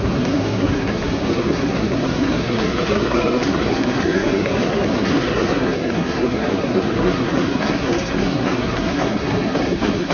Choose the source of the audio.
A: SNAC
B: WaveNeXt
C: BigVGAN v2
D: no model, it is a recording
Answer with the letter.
A